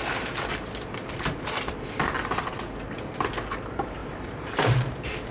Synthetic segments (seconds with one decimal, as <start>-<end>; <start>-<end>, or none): 4.0-4.7

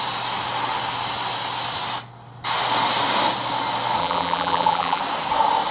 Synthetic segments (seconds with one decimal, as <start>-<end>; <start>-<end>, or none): 4.0-5.0

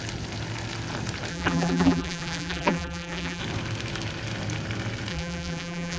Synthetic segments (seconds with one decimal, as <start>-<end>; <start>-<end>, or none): 1.3-3.4; 5.1-6.0

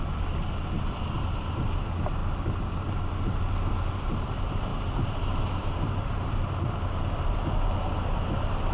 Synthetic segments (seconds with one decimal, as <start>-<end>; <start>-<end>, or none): 4.7-6.5

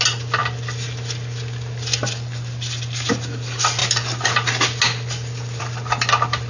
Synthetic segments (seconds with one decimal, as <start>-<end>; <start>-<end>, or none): none

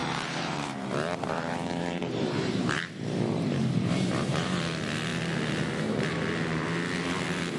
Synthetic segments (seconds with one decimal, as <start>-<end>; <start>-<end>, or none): 0.0-4.6